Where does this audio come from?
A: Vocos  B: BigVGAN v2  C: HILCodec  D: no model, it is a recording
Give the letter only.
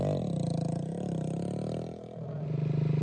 D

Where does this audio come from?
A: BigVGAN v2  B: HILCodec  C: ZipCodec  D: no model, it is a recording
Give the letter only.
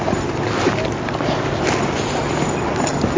D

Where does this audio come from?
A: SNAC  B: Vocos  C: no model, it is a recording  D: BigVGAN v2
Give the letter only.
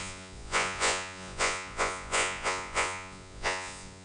B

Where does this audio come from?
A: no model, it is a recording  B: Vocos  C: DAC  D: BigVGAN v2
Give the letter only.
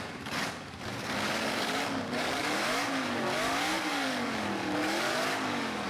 C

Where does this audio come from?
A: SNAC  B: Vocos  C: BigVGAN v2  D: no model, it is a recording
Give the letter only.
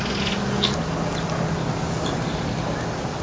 D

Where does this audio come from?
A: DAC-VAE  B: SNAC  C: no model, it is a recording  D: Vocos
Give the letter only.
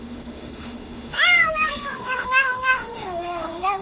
A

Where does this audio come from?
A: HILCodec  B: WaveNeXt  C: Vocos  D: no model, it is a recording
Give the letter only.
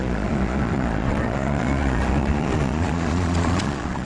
C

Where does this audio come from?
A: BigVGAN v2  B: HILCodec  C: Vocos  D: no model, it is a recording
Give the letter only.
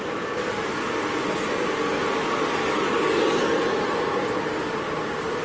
D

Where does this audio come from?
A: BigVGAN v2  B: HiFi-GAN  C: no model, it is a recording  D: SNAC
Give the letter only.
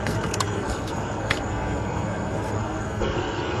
D